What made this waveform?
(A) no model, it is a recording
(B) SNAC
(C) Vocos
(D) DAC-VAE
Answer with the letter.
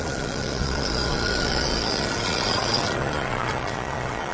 C